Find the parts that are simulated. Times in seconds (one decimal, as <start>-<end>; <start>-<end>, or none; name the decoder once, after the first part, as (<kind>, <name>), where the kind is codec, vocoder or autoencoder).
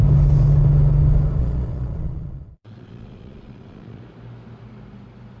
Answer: 1.4-4.0 (vocoder, Vocos)